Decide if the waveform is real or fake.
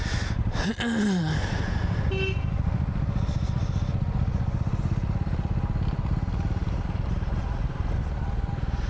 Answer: real